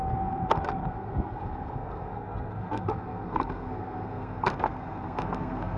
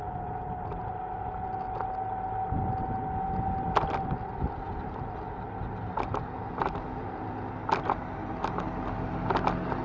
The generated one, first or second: first